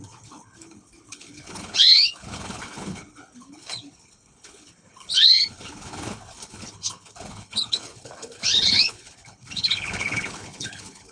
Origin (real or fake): fake